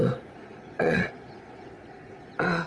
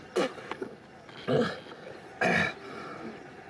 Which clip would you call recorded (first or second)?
second